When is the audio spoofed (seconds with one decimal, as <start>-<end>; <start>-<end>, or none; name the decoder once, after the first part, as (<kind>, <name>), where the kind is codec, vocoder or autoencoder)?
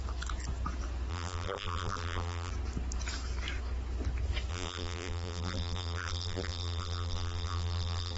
1.1-2.5 (vocoder, BigVGAN v2); 4.5-8.2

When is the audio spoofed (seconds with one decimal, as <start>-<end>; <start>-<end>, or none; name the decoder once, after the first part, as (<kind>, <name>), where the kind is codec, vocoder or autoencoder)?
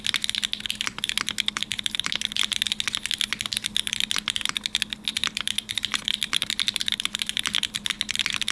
5.1-8.0 (vocoder, BigVGAN v2)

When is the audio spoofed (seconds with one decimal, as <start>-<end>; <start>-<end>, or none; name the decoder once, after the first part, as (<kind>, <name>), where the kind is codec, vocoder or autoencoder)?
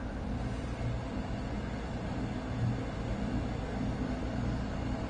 none